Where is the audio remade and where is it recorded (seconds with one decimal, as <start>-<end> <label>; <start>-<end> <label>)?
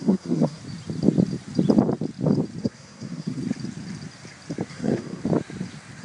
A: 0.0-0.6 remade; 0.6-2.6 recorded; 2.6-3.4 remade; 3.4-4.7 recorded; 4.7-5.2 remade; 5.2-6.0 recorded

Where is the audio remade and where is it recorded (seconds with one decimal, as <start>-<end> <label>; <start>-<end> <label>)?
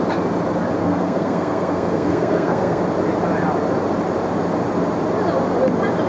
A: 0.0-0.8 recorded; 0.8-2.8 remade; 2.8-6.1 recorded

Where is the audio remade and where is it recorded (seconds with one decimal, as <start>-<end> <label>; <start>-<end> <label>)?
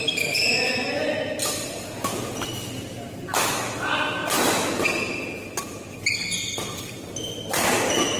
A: 0.0-8.2 recorded